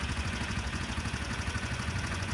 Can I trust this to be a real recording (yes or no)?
no